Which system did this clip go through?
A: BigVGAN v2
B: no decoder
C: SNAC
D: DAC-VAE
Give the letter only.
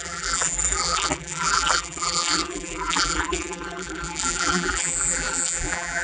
A